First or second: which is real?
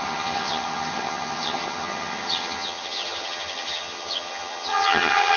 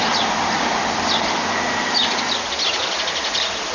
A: second